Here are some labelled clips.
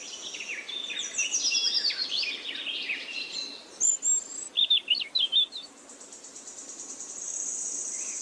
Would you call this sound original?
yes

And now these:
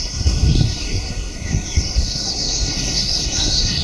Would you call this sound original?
no